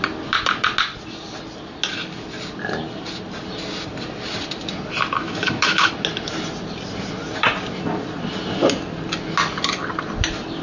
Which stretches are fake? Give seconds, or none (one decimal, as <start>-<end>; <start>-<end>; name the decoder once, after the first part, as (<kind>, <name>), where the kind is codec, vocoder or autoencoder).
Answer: 5.2-5.9 (autoencoder, DAC-VAE)